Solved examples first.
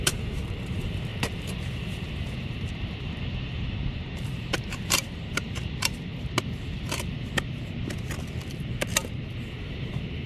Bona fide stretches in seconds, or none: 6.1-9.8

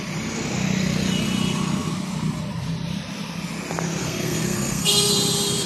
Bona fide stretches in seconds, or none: 0.0-4.0; 5.1-5.7

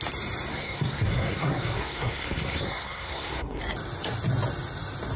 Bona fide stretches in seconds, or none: 0.0-0.5; 3.6-5.2

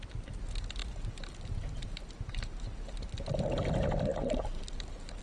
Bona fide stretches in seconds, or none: 0.0-0.8; 3.2-4.1

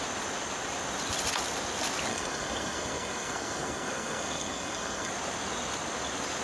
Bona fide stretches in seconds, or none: 0.0-2.1; 5.1-6.4